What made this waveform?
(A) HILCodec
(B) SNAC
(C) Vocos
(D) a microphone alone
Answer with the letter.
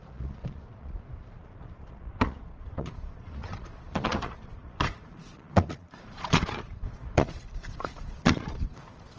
C